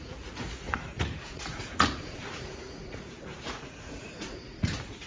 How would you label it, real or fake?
fake